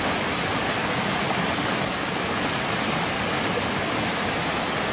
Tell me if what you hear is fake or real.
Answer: real